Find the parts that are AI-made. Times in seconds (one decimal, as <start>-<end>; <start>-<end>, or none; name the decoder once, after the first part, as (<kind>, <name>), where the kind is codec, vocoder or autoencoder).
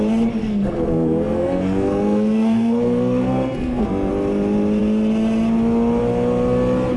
0.4-4.1 (codec, SNAC)